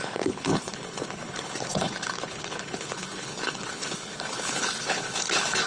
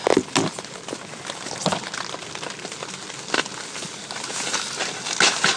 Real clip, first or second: second